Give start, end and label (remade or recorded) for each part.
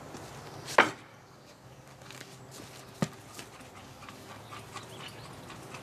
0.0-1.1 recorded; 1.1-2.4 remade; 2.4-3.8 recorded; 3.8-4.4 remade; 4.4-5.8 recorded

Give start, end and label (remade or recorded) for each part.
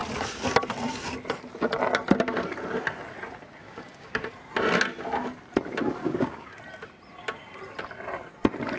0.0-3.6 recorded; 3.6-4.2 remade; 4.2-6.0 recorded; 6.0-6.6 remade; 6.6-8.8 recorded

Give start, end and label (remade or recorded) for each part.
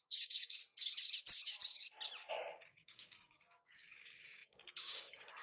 0.0-0.6 remade; 0.6-2.3 recorded; 2.3-5.4 remade